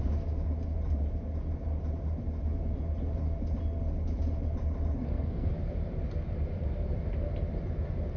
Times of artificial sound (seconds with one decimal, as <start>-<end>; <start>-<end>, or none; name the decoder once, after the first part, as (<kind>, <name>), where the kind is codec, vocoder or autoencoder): 5.0-5.5 (codec, SNAC)